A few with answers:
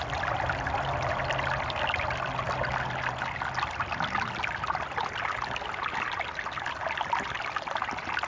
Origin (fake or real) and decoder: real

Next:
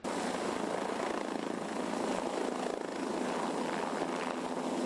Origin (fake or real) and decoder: real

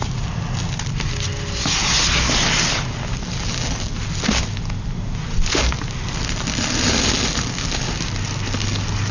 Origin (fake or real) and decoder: real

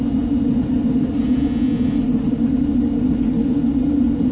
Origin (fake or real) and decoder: real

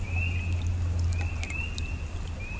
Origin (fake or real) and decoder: real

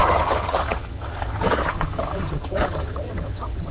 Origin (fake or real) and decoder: fake, vocoder, HiFi-GAN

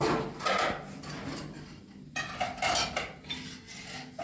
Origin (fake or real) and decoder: real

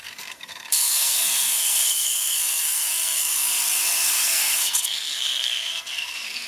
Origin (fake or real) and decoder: fake, codec, SNAC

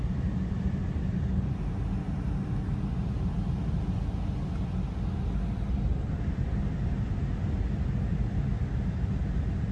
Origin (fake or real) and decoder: real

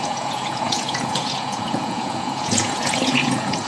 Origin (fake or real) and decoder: fake, vocoder, Vocos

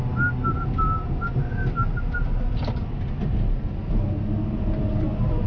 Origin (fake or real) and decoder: real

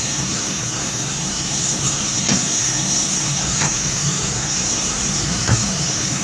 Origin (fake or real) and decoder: fake, codec, SNAC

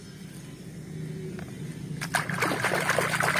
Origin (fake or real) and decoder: real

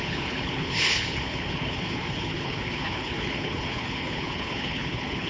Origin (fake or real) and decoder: fake, codec, HILCodec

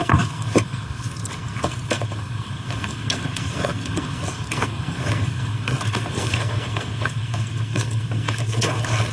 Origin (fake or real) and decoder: fake, codec, SNAC